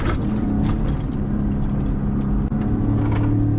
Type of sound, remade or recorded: recorded